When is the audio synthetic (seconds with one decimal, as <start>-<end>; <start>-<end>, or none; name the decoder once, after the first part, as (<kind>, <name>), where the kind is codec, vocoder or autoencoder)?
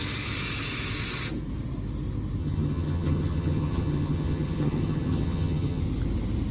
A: 2.4-5.8 (vocoder, HiFi-GAN)